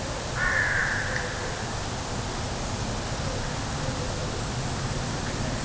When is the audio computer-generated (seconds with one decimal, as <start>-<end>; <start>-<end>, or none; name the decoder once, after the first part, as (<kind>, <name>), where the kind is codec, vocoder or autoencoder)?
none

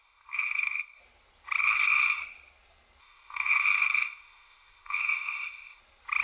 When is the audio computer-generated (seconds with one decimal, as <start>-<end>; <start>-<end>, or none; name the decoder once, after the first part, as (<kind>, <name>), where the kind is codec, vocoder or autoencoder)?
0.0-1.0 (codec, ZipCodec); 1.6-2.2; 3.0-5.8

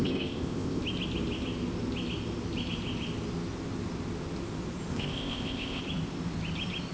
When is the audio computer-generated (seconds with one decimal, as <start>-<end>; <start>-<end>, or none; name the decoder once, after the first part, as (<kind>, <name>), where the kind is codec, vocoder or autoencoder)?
0.0-0.8 (codec, ZipCodec); 4.9-5.8